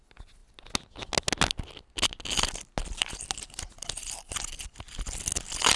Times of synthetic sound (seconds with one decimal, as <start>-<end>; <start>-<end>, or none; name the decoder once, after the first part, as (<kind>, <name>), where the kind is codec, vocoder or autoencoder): none